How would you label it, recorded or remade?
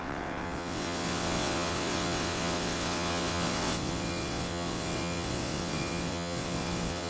remade